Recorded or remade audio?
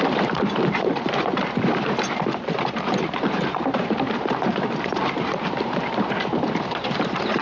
remade